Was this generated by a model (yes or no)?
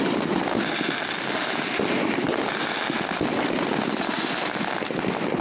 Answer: no